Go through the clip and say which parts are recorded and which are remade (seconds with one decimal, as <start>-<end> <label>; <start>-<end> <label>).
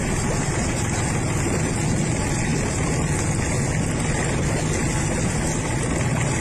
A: 0.0-6.4 recorded